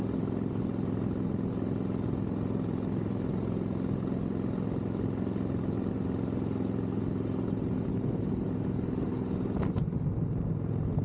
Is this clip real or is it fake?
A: real